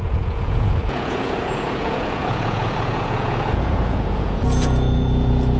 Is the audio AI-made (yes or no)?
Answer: yes